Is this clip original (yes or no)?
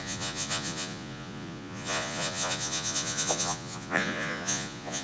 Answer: no